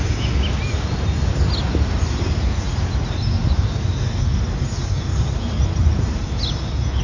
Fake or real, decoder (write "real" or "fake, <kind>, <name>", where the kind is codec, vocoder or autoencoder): real